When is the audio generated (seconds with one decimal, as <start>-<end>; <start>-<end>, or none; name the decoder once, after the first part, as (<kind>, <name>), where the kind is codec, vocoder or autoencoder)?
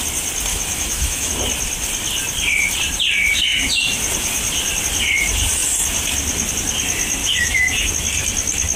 0.5-1.3 (autoencoder, DAC-VAE); 7.2-7.9